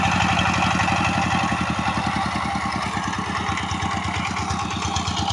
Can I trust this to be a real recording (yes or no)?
yes